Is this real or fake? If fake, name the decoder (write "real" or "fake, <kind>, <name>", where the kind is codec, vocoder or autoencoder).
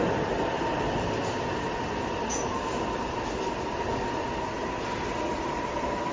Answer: real